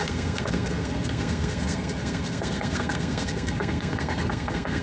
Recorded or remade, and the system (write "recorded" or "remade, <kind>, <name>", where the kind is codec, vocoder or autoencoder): remade, codec, SNAC